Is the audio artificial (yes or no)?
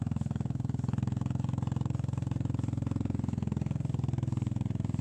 yes